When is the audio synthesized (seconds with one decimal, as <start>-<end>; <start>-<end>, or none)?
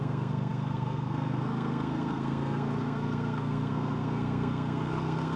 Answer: 0.0-5.4